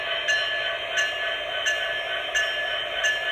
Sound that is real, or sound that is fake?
real